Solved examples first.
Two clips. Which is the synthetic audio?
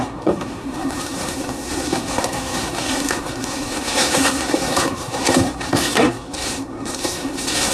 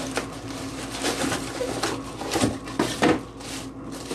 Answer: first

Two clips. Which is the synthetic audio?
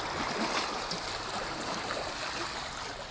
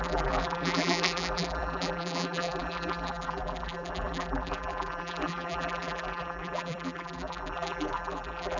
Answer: second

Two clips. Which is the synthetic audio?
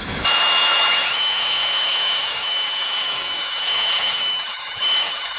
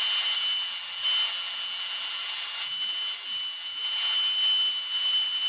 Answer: first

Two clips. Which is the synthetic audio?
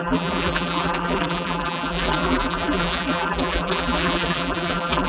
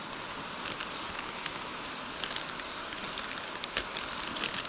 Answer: first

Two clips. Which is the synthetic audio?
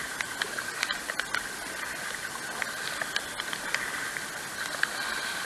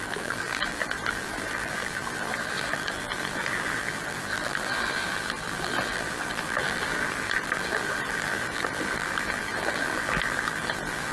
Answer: second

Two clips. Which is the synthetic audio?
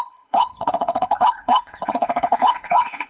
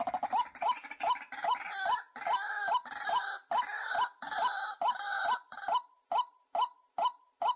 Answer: first